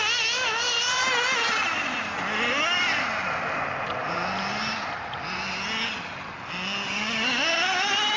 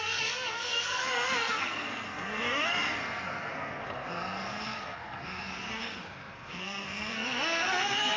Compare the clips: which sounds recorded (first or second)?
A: first